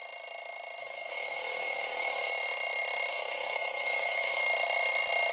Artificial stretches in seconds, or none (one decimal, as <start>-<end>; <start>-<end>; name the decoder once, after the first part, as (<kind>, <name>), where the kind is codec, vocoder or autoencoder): 0.8-2.3 (codec, DAC); 3.1-4.4